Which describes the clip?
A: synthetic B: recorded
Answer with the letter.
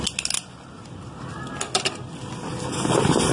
B